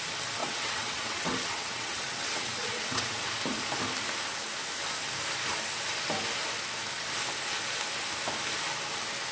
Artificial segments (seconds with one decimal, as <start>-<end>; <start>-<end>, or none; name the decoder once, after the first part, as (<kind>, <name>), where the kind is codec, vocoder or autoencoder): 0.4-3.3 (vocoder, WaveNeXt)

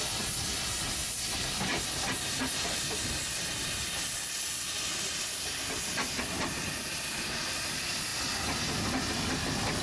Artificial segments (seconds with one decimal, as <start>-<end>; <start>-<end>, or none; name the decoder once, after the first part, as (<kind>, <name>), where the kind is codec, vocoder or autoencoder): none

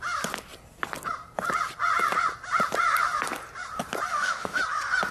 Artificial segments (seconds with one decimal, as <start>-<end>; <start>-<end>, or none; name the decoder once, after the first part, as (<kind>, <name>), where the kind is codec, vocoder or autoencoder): 4.1-4.6 (autoencoder, DAC-VAE)

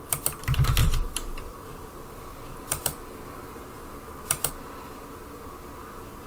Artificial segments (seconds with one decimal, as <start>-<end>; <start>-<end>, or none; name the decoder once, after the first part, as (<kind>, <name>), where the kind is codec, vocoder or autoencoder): 0.8-4.5 (vocoder, BigVGAN v2)

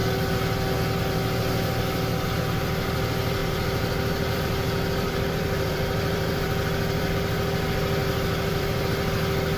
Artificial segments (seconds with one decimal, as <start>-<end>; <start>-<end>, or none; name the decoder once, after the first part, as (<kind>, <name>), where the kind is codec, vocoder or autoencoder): 3.4-7.1 (vocoder, BigVGAN v2); 8.0-8.8

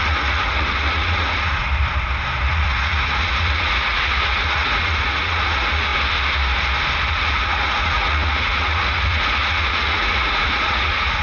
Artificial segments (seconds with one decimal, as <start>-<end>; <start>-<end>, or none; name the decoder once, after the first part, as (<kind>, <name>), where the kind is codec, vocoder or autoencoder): 0.0-1.7 (vocoder, Vocos); 2.5-5.9; 7.1-11.2